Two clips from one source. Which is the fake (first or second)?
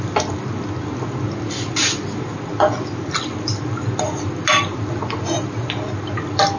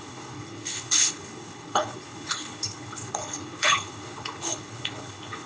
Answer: second